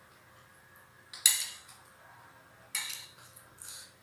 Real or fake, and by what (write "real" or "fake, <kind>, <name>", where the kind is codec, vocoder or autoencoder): real